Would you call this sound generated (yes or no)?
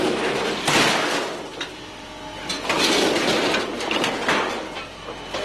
no